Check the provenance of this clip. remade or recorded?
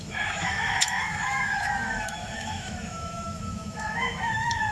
remade